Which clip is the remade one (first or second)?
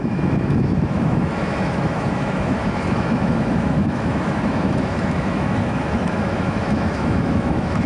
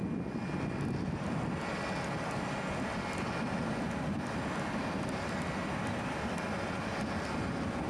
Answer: first